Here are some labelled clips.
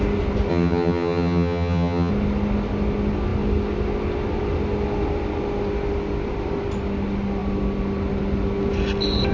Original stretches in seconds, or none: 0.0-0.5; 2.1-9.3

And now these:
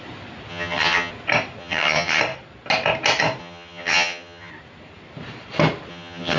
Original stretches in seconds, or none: 0.0-0.5; 1.1-1.6; 2.2-3.4; 4.5-5.9

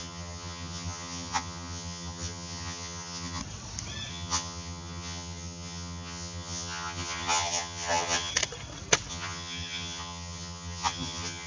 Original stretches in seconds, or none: 3.4-4.1; 8.3-9.1

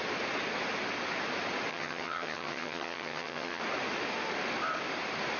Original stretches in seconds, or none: 0.0-1.7; 3.6-5.4

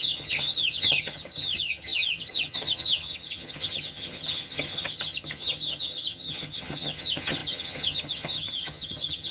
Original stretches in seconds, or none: none

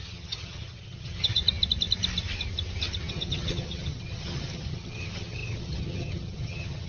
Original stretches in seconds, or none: 1.4-3.1

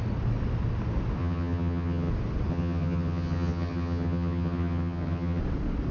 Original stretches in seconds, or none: 0.0-1.2; 2.1-2.5; 5.4-5.9